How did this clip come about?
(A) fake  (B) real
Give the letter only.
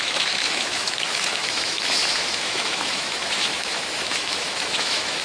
A